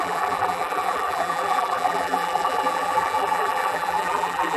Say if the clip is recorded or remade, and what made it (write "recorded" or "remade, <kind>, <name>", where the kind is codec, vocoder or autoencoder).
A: remade, vocoder, BigVGAN v2